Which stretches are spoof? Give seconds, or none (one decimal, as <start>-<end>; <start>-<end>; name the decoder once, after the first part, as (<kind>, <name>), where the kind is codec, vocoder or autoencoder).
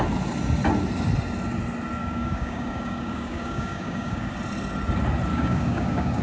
2.0-4.3 (codec, DAC); 5.3-6.2